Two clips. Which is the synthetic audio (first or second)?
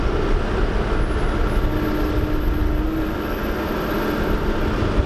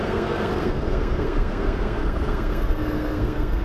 second